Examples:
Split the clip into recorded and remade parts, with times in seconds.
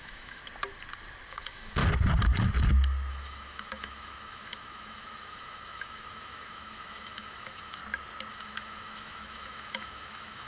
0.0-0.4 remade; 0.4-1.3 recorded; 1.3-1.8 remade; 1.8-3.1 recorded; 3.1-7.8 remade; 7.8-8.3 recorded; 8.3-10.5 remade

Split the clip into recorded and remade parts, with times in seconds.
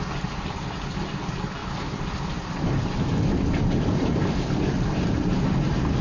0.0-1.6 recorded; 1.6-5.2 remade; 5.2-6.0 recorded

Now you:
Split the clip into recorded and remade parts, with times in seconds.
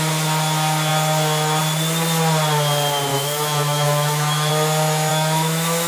0.0-3.1 recorded; 3.1-4.5 remade; 4.5-5.1 recorded; 5.1-5.9 remade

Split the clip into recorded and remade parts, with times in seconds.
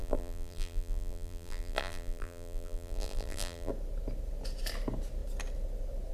0.0-3.7 remade; 3.7-6.1 recorded